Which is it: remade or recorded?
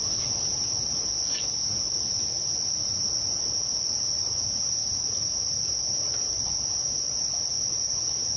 recorded